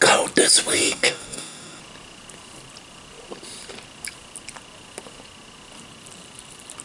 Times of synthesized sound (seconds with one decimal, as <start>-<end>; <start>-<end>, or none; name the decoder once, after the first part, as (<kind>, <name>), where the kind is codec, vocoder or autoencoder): 0.7-1.8 (codec, DAC)